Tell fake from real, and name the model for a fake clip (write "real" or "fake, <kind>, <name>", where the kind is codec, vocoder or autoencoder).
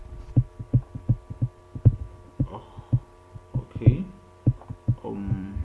real